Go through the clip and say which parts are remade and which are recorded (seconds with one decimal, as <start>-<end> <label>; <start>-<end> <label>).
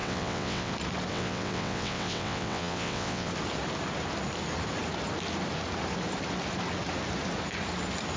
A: 0.0-0.7 remade; 0.7-1.1 recorded; 1.1-3.3 remade; 3.3-8.2 recorded